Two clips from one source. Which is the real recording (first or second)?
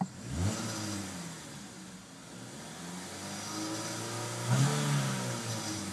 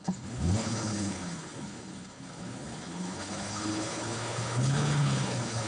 first